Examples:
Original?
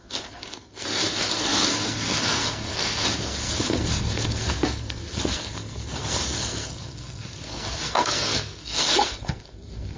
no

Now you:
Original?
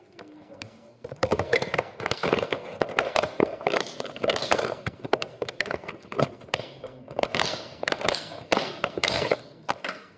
no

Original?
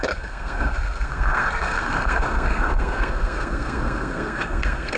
no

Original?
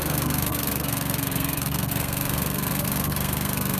no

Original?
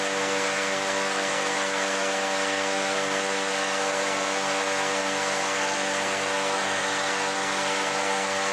no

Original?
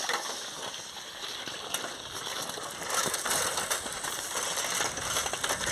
yes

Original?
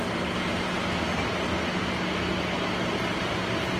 yes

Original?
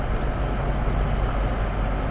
yes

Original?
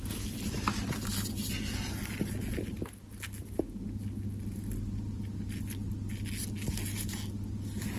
yes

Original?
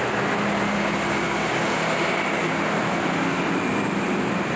yes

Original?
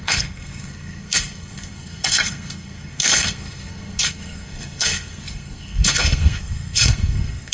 no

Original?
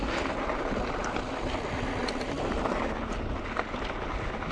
yes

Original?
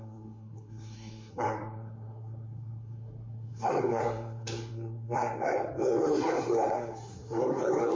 no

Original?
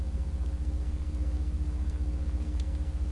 no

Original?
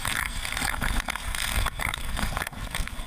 no